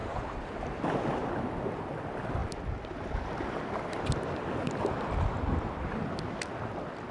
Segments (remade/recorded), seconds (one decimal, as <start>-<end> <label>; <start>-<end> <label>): 0.0-0.5 remade; 0.5-7.1 recorded